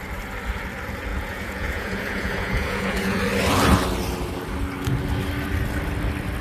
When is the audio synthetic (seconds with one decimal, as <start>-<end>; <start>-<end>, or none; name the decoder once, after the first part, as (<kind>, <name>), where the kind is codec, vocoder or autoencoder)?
1.1-3.2 (vocoder, Vocos)